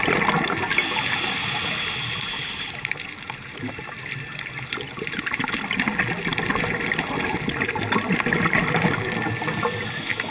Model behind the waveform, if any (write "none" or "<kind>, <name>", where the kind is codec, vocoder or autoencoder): none